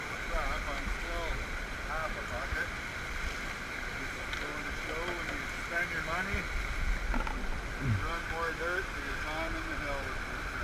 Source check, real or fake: real